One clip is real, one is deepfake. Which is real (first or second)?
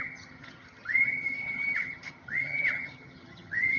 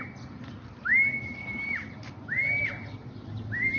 second